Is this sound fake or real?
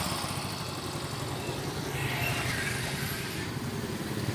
real